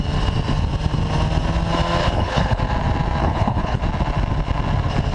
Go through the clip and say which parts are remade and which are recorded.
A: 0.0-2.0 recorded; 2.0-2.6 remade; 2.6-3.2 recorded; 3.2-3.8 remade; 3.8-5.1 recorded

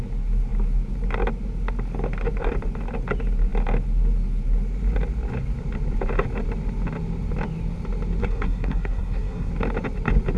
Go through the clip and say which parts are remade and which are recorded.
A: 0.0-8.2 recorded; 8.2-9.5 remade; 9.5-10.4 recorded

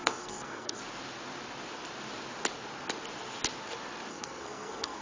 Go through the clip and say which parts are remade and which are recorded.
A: 0.0-0.8 remade; 0.8-4.1 recorded; 4.1-5.0 remade

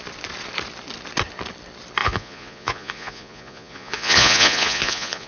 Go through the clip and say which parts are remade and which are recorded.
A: 0.0-2.0 recorded; 2.0-5.3 remade

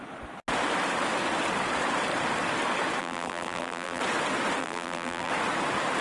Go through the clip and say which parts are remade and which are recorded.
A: 0.0-3.0 recorded; 3.0-4.0 remade; 4.0-4.6 recorded; 4.6-5.3 remade; 5.3-6.0 recorded

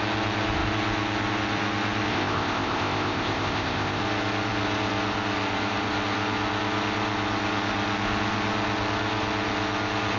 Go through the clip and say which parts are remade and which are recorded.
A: 0.0-2.1 recorded; 2.1-4.0 remade; 4.0-10.2 recorded

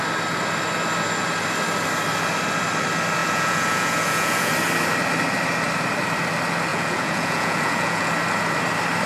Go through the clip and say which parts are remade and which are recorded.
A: 0.0-3.2 recorded; 3.2-4.5 remade; 4.5-6.7 recorded; 6.7-8.1 remade; 8.1-9.1 recorded

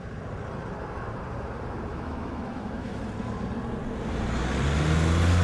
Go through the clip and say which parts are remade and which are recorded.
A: 0.0-1.9 recorded; 1.9-3.0 remade; 3.0-5.4 recorded